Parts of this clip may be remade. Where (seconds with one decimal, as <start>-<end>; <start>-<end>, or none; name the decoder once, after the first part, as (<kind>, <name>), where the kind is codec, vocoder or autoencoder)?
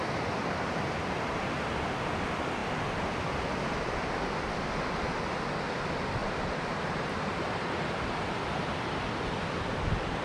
6.2-7.7 (vocoder, BigVGAN v2)